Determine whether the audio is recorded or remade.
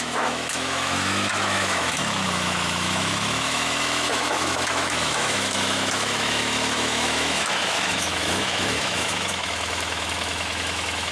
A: remade